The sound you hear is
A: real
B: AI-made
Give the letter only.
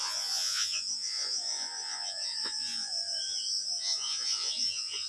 B